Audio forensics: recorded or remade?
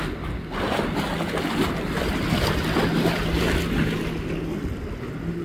recorded